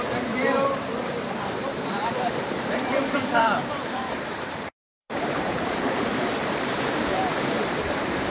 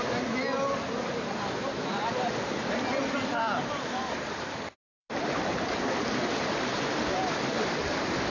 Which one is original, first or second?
second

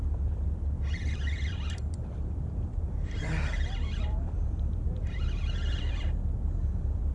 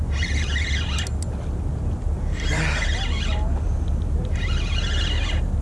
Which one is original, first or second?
second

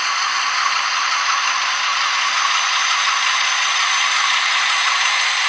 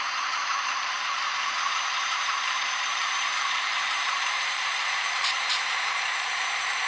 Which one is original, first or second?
first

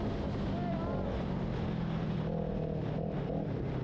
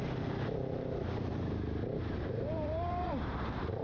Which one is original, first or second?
first